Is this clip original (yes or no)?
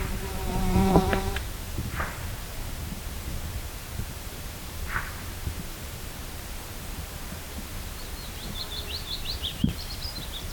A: no